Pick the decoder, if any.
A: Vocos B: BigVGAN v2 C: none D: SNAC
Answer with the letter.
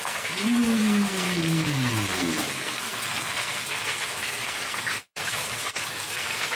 D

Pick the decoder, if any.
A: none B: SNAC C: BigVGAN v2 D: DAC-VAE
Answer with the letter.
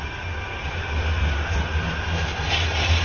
A